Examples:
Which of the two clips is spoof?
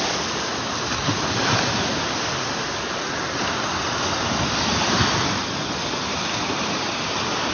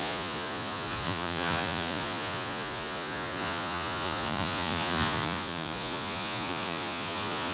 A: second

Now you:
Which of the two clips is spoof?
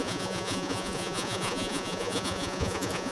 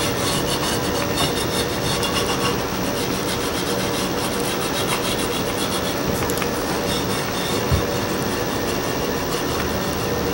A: first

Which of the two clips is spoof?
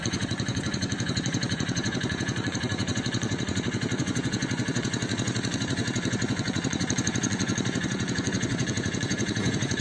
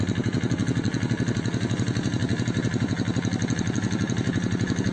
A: first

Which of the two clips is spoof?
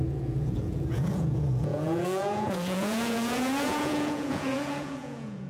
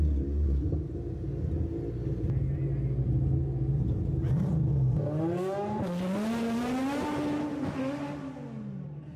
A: first